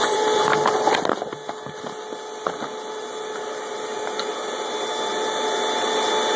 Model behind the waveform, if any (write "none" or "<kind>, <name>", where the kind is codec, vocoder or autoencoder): none